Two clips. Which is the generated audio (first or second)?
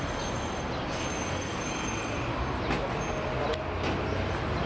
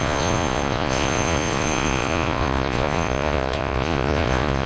second